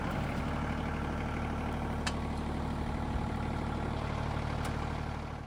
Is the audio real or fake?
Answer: real